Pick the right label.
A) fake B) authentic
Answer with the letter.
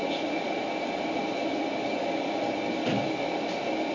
B